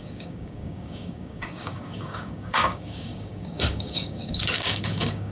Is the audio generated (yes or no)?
yes